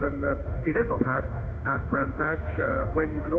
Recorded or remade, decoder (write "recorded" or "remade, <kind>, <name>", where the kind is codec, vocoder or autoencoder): remade, autoencoder, DAC-VAE